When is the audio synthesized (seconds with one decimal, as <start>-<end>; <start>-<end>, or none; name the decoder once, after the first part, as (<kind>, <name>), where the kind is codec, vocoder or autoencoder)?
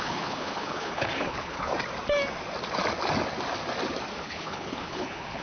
0.0-1.7 (codec, HILCodec); 4.2-5.4